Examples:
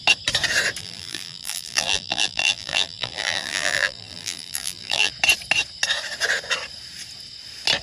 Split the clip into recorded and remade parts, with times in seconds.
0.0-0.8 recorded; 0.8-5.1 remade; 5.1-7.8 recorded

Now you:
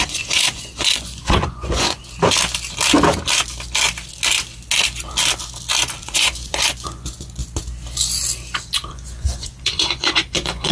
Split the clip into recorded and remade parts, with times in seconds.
0.0-2.0 remade; 2.0-6.0 recorded; 6.0-7.4 remade; 7.4-8.9 recorded; 8.9-10.7 remade

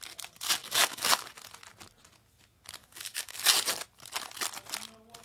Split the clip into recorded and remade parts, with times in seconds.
0.0-0.6 recorded; 0.6-1.2 remade; 1.2-2.8 recorded; 2.8-3.4 remade; 3.4-5.2 recorded

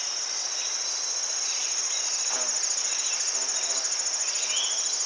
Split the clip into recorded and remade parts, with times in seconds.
0.0-5.1 recorded

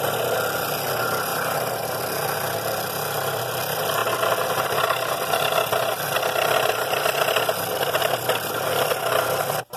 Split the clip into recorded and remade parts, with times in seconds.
0.0-1.3 recorded; 1.3-2.0 remade; 2.0-9.8 recorded

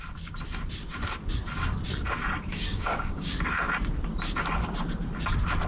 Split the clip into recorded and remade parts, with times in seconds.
0.0-2.5 recorded; 2.5-3.4 remade; 3.4-5.7 recorded

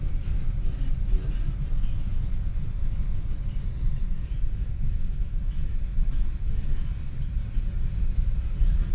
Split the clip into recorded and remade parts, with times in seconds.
0.0-7.4 recorded; 7.4-8.9 remade

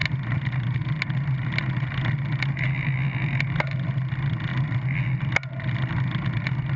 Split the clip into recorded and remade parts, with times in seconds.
0.0-6.8 recorded